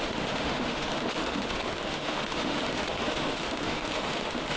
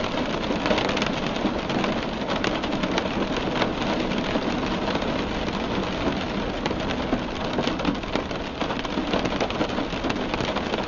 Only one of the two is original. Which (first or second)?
second